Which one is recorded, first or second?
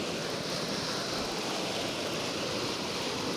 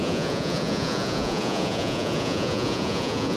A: first